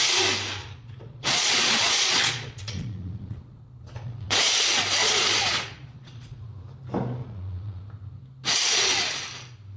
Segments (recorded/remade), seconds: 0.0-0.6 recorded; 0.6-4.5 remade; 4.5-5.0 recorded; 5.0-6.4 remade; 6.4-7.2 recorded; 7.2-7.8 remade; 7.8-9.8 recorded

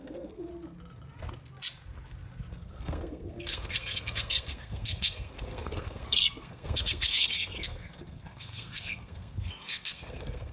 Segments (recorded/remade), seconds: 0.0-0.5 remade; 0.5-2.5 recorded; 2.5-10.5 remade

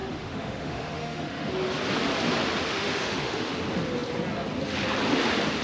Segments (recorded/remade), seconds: 0.0-1.5 remade; 1.5-2.7 recorded; 2.7-3.5 remade; 3.5-5.6 recorded

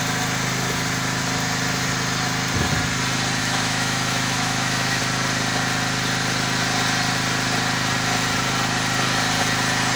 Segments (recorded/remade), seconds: 0.0-3.4 recorded; 3.4-5.0 remade; 5.0-10.0 recorded

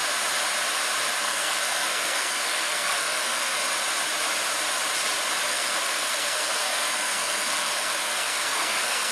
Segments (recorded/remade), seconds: 0.0-1.2 recorded; 1.2-3.6 remade; 3.6-5.5 recorded; 5.5-9.1 remade

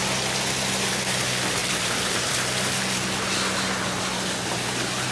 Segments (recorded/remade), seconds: 0.0-1.6 recorded; 1.6-2.3 remade; 2.3-5.1 recorded

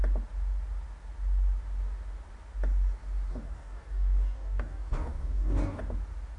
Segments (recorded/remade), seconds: 0.0-3.3 recorded; 3.3-5.8 remade; 5.8-6.4 recorded

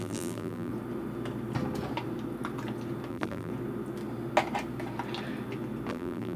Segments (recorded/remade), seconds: 0.0-0.7 remade; 0.7-3.1 recorded; 3.1-3.5 remade; 3.5-5.9 recorded; 5.9-6.4 remade